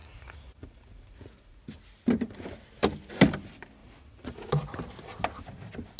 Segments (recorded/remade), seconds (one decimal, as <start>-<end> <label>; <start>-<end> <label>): 0.0-1.6 remade; 1.6-3.8 recorded; 3.8-4.5 remade; 4.5-6.0 recorded